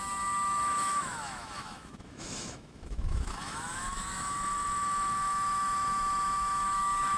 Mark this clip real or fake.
fake